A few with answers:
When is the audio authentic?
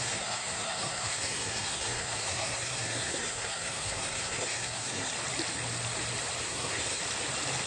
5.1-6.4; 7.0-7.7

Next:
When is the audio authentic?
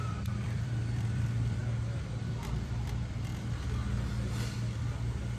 1.6-2.2; 3.3-5.4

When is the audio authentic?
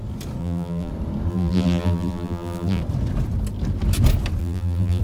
0.0-0.4; 0.9-1.3; 2.8-4.4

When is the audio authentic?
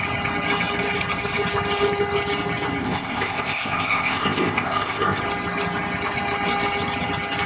0.0-2.8; 5.2-7.5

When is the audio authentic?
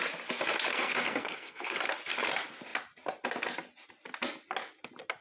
0.0-0.7; 1.8-5.2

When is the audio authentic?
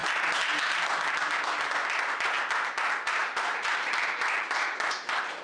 0.0-3.2